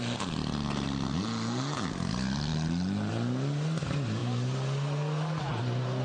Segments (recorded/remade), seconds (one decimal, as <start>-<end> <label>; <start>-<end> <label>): 0.0-6.0 recorded